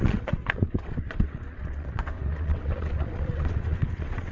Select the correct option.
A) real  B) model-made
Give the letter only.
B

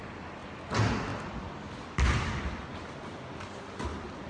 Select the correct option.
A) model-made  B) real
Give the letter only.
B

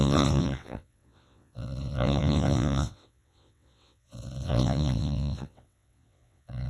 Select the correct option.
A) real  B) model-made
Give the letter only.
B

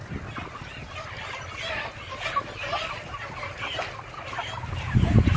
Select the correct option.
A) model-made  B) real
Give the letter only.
B